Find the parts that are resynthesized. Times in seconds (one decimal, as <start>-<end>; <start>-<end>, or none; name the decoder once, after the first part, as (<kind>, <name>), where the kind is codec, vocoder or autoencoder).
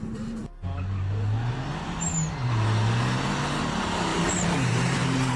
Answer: 0.0-0.4 (vocoder, BigVGAN v2); 3.6-5.4